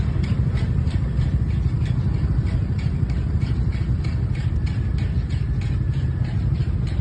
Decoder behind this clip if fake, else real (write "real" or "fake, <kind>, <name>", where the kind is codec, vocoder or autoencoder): real